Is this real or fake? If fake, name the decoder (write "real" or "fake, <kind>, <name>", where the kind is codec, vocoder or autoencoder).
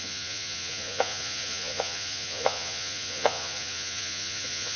fake, vocoder, Vocos